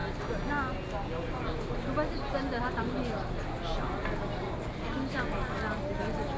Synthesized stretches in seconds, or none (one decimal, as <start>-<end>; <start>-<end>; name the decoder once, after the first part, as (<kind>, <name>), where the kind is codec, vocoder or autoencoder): none